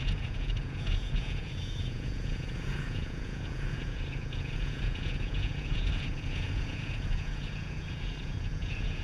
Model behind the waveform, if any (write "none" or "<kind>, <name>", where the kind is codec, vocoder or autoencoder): vocoder, Vocos